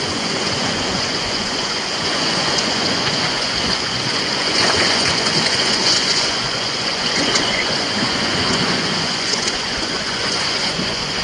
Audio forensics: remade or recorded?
remade